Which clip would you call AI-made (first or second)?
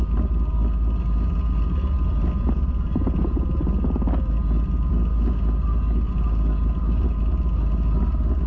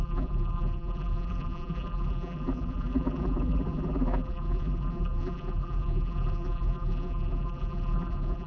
second